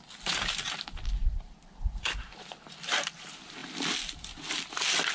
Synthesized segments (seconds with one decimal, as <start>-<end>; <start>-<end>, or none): 1.2-2.7

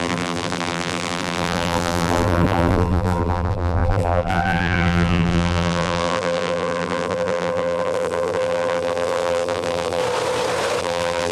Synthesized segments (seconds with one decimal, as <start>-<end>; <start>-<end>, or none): 0.0-10.0; 10.8-11.3

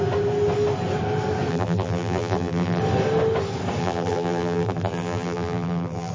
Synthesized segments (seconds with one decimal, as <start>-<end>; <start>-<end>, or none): 1.5-2.8; 3.8-6.1

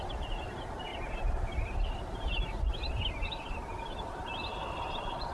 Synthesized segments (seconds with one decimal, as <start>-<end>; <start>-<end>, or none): 0.0-5.3